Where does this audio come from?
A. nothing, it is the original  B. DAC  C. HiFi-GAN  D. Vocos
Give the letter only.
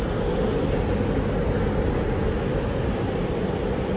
A